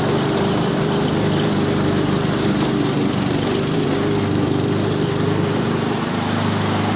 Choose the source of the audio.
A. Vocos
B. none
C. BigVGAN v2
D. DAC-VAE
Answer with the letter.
C